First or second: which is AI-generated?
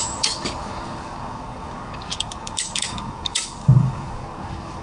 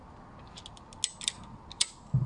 first